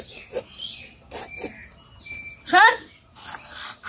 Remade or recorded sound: recorded